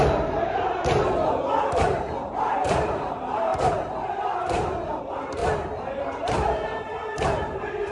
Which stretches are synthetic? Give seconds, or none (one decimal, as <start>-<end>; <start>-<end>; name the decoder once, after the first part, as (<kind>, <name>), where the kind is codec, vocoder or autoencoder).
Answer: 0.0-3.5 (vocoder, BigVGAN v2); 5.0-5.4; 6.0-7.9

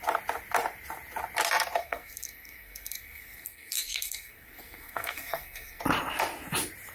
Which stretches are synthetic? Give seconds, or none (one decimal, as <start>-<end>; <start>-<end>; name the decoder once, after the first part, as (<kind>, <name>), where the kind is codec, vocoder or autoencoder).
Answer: 1.8-5.8 (codec, SNAC)

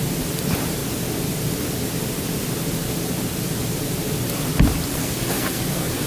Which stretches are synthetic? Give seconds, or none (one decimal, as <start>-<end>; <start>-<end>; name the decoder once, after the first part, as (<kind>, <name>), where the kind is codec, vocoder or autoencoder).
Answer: 4.9-6.1 (codec, SNAC)

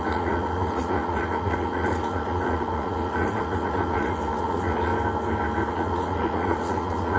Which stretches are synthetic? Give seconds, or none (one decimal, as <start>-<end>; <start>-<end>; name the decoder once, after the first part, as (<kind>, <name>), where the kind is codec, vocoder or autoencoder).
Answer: 0.0-4.9 (vocoder, Vocos); 5.7-7.2

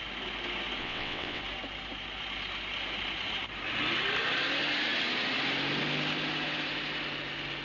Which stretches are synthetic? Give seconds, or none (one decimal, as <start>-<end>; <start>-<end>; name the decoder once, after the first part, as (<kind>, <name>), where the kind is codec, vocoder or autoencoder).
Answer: 0.8-1.4 (vocoder, WaveNeXt)

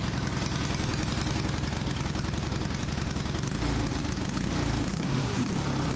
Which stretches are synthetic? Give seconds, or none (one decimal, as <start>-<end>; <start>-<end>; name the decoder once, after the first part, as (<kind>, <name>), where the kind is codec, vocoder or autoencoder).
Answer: 4.9-5.5 (codec, SNAC)

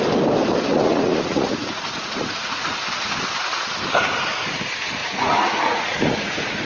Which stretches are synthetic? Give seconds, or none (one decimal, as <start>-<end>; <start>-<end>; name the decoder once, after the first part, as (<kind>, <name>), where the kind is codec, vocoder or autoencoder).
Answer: 0.7-2.7 (vocoder, Vocos); 5.0-6.6

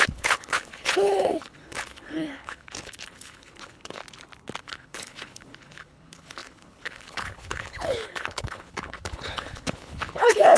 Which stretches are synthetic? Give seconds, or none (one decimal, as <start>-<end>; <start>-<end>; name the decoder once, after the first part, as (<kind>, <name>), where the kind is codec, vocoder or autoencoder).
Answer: 0.0-4.0 (codec, HILCodec); 4.6-10.6